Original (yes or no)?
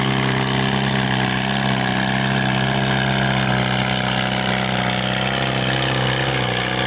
yes